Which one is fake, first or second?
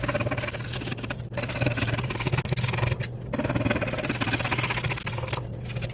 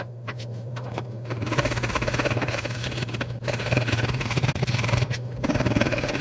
second